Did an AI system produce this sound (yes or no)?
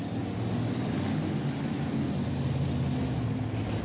no